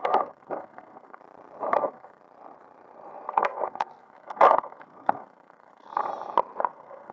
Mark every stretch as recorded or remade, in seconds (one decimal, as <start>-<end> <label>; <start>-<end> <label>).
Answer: 0.0-1.2 remade; 1.2-1.8 recorded; 1.8-2.2 remade; 2.2-3.3 recorded; 3.3-5.9 remade; 5.9-6.6 recorded; 6.6-7.1 remade